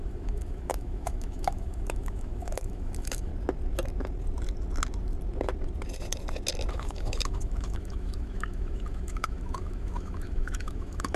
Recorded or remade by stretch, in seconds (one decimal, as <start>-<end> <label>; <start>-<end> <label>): 0.0-3.3 remade; 3.3-6.7 recorded; 6.7-11.2 remade